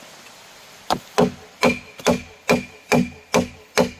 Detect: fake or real real